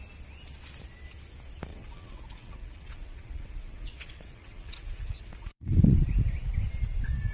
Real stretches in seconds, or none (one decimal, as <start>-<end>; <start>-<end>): 0.0-1.7; 6.1-7.3